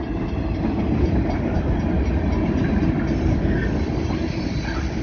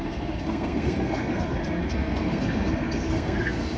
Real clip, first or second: first